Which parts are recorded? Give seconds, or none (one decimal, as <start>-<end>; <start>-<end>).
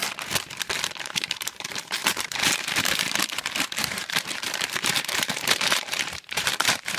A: 0.0-1.0